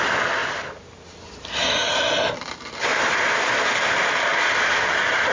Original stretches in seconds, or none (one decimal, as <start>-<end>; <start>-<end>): 0.0-0.4; 1.2-2.9; 3.6-5.3